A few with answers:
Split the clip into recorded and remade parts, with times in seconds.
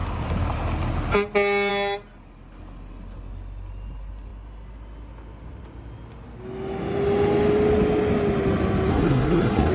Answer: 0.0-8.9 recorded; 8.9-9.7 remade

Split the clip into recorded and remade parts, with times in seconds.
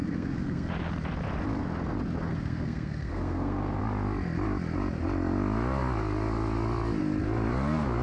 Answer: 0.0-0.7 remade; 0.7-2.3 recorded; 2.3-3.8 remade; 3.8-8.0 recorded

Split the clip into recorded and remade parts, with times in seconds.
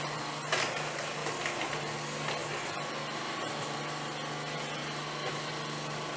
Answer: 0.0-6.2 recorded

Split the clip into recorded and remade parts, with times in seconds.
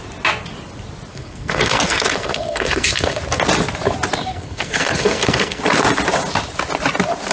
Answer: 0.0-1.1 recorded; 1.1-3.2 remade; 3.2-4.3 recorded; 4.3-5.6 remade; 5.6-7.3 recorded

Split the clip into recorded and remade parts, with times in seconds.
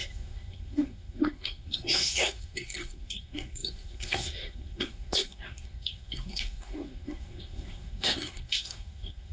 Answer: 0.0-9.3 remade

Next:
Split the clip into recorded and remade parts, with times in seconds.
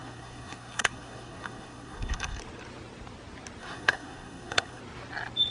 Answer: 0.0-2.4 remade; 2.4-3.6 recorded; 3.6-4.8 remade; 4.8-5.5 recorded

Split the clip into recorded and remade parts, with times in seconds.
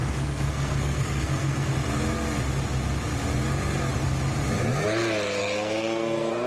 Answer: 0.0-1.7 remade; 1.7-5.4 recorded; 5.4-6.5 remade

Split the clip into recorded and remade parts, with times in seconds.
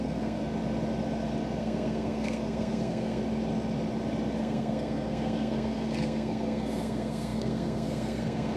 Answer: 0.0-0.4 remade; 0.4-1.6 recorded; 1.6-3.2 remade; 3.2-4.4 recorded; 4.4-8.6 remade